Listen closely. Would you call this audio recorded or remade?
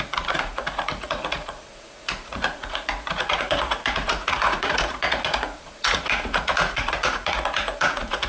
remade